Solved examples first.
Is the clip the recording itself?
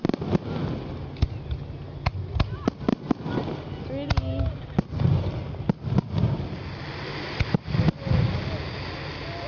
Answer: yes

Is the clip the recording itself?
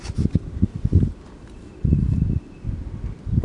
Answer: yes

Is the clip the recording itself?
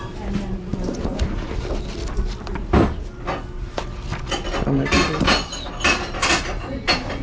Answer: yes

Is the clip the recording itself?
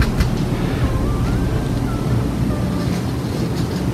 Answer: yes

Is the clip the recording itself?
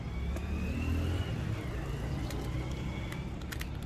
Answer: yes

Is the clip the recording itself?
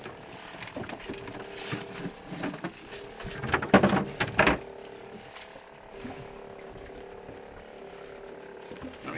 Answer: yes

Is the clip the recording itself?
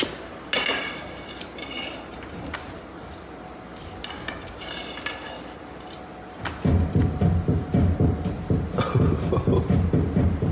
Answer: yes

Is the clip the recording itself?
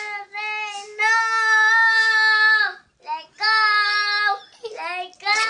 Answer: yes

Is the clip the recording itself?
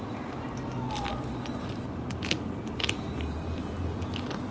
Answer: yes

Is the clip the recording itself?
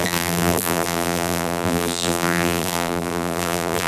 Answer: no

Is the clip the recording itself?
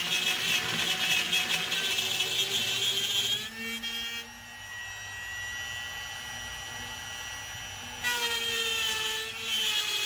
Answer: yes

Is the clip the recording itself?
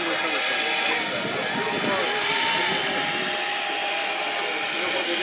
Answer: yes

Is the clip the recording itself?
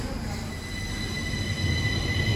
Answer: yes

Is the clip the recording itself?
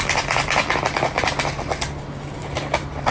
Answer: yes